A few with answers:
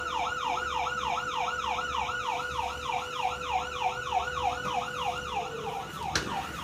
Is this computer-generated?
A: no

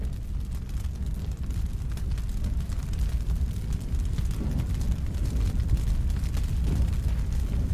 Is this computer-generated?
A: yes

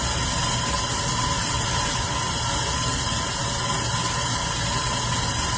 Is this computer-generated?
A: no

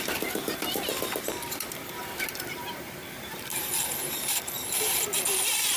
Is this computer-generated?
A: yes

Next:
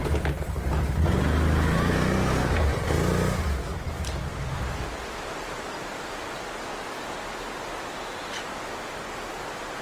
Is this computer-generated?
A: no